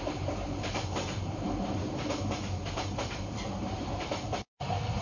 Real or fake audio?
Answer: fake